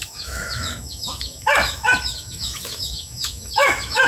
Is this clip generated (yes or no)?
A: yes